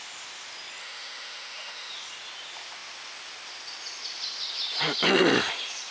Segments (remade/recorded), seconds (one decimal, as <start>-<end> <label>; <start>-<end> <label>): 0.0-0.8 recorded; 0.8-1.9 remade; 1.9-5.9 recorded